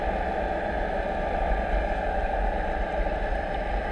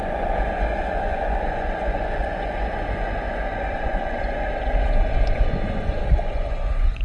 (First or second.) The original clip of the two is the first